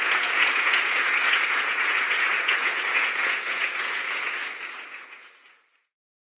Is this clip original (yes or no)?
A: no